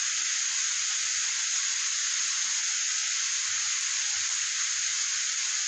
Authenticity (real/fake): real